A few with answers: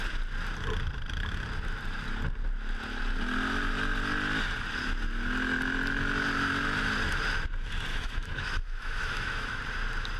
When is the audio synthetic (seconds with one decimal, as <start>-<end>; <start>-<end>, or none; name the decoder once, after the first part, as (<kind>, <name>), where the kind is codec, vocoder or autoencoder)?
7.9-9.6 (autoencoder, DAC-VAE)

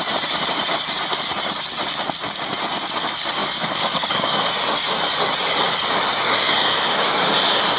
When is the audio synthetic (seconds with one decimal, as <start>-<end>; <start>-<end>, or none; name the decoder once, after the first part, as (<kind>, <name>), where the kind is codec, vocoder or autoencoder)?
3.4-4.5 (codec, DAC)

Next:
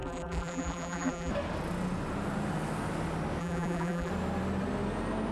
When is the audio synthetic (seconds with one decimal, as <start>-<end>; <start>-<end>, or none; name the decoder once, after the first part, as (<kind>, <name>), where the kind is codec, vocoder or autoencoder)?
0.0-1.3 (vocoder, BigVGAN v2); 3.4-4.1

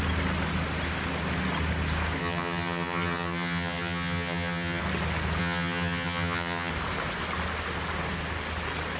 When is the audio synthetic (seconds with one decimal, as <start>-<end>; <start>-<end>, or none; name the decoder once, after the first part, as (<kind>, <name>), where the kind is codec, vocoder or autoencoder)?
2.2-4.8 (vocoder, HiFi-GAN); 5.4-6.7

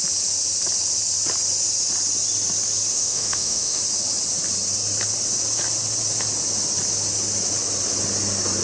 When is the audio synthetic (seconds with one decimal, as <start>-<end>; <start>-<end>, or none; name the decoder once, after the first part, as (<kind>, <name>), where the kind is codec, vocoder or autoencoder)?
2.9-3.8 (autoencoder, DAC-VAE)